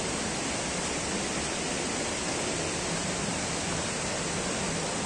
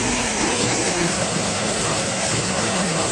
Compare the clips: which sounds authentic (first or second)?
first